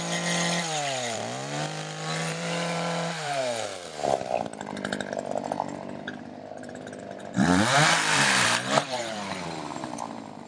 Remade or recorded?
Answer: remade